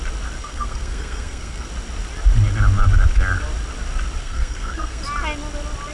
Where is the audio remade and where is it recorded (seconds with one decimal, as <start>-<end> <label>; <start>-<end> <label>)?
0.0-0.4 recorded; 0.4-1.7 remade; 1.7-4.2 recorded; 4.2-5.0 remade; 5.0-5.9 recorded